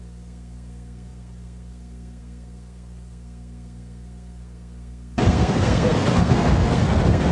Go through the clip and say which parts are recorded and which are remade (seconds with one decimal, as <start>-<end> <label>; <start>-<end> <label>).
0.0-7.3 remade